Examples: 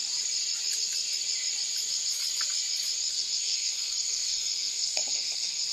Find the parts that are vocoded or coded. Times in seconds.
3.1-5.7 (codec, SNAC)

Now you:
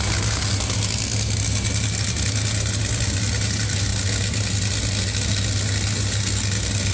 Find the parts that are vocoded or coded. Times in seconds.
none

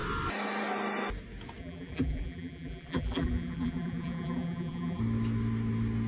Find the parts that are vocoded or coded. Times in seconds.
1.6-5.0 (vocoder, BigVGAN v2)